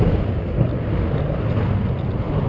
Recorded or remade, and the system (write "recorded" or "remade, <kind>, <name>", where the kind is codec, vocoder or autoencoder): recorded